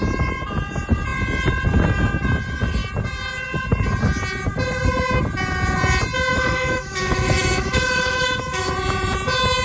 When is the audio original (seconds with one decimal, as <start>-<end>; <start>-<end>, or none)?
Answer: 0.0-6.3; 8.7-9.6